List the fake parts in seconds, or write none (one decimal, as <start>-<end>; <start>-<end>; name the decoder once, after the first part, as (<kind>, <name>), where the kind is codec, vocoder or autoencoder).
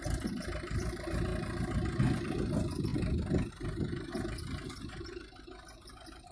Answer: none